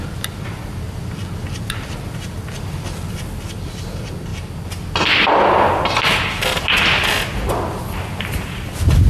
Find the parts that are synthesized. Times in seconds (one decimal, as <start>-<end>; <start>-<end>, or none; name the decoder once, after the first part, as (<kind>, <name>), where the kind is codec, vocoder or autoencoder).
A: none